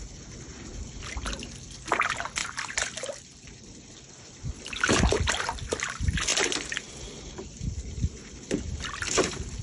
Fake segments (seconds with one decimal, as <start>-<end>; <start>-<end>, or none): 2.4-3.9; 6.3-7.4